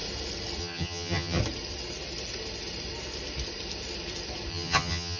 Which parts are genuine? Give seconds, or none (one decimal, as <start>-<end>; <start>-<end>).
0.0-0.6; 1.4-4.5